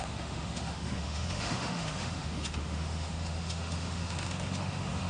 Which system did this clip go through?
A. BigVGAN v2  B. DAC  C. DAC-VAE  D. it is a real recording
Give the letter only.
C